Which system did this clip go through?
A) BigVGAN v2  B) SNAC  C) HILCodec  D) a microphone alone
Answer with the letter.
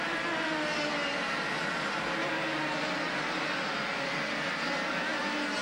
D